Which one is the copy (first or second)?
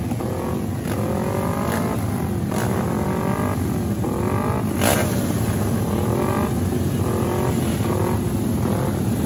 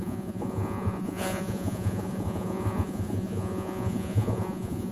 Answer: second